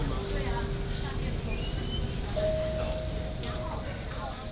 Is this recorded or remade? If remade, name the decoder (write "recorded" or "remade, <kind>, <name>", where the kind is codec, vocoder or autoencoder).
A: recorded